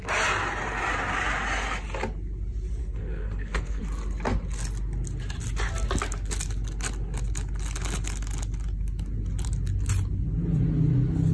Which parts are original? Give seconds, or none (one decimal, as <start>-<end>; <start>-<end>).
0.0-2.8; 3.8-11.3